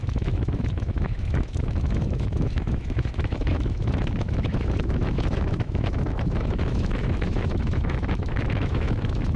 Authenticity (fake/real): fake